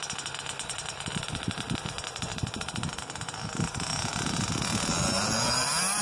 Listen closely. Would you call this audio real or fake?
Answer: real